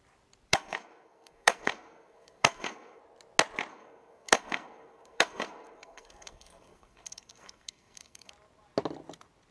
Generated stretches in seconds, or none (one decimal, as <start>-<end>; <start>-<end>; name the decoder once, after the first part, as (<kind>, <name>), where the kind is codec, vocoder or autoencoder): 0.5-3.0 (codec, SNAC); 3.7-8.3

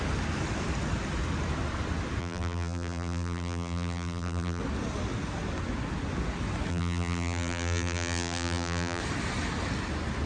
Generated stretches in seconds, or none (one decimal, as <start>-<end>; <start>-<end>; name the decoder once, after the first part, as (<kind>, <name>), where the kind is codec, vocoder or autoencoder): 2.2-4.6 (vocoder, BigVGAN v2); 6.7-9.0

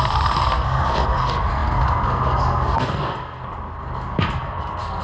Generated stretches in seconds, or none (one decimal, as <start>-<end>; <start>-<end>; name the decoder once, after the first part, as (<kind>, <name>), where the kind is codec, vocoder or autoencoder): 0.0-5.0 (codec, SNAC)